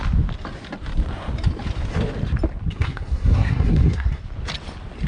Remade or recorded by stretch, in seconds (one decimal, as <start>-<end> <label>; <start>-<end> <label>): 0.0-2.7 recorded; 2.7-4.2 remade; 4.2-5.1 recorded